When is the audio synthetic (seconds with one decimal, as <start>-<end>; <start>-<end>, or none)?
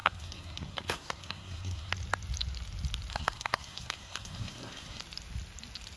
0.0-1.9; 3.1-5.0